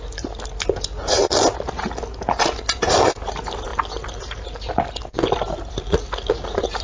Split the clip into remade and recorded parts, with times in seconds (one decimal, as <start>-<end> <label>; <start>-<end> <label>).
0.0-6.8 recorded